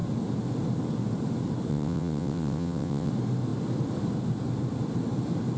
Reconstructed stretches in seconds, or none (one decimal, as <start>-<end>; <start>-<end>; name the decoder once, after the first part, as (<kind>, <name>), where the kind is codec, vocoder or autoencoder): 1.7-3.1 (vocoder, WaveNeXt)